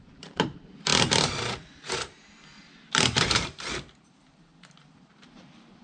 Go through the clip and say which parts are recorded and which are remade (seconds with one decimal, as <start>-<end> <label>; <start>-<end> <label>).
0.0-0.9 remade; 0.9-2.9 recorded; 2.9-5.8 remade